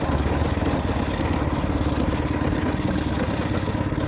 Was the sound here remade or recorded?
recorded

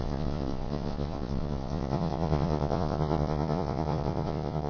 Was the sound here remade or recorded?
remade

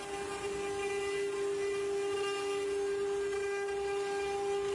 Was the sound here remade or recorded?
recorded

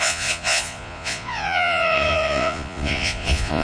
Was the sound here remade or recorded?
remade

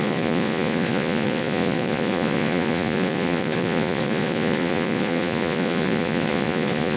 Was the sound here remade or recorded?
remade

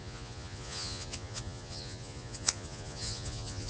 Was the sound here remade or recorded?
remade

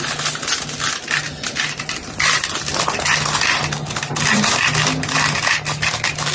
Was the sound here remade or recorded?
recorded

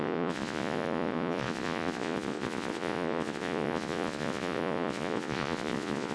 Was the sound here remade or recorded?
remade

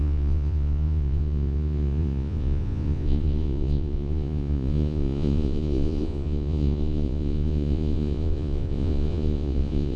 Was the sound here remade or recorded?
remade